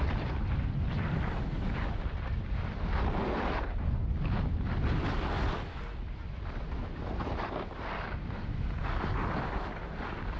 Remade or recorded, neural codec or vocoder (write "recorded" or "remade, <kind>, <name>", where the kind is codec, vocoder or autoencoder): recorded